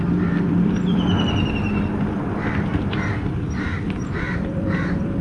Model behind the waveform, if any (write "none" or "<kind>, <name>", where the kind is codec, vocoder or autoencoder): none